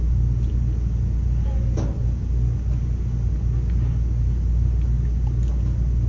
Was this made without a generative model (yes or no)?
yes